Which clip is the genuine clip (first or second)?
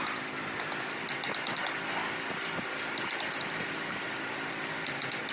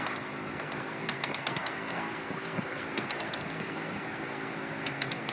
first